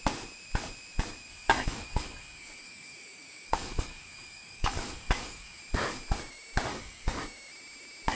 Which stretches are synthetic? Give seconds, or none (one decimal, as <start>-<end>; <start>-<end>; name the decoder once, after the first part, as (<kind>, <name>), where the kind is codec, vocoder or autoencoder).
1.3-5.6 (codec, DAC); 6.7-7.2